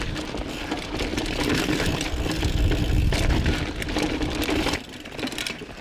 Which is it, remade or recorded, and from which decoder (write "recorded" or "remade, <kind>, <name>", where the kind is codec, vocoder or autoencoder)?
recorded